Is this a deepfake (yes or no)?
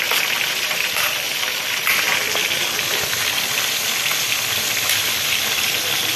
no